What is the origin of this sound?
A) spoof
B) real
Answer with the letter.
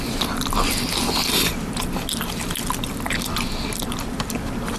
B